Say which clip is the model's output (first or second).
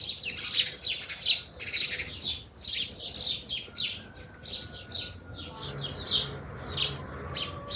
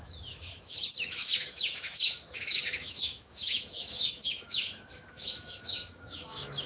second